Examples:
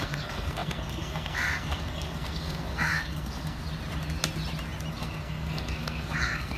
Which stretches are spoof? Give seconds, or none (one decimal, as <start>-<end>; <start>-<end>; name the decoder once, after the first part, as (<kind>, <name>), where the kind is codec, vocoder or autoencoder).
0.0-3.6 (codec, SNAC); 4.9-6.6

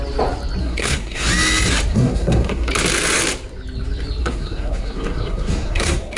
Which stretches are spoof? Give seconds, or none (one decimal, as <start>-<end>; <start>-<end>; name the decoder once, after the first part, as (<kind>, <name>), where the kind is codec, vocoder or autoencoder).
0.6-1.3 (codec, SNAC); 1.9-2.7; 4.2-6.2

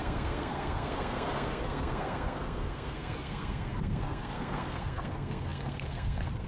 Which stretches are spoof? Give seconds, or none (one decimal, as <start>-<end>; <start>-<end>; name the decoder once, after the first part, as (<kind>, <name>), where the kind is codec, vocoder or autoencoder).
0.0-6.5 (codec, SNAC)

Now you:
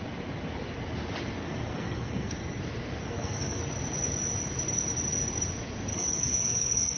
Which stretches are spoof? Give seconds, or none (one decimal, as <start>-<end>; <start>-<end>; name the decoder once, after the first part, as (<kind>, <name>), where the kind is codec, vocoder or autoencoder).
1.4-2.6 (codec, SNAC); 3.0-3.6; 5.9-7.0

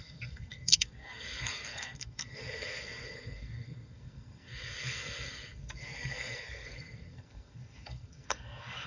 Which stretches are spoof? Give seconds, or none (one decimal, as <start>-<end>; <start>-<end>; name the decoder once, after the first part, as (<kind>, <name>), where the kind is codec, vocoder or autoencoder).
0.0-8.9 (codec, SNAC)

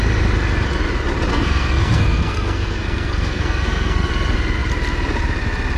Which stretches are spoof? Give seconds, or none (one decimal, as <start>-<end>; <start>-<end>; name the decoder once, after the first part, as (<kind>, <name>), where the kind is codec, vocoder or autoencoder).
1.3-4.1 (codec, SNAC)

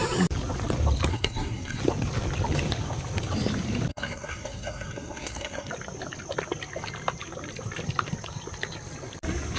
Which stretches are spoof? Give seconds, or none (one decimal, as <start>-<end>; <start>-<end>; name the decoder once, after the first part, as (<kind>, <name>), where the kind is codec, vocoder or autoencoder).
1.1-1.8 (codec, SNAC); 3.9-5.7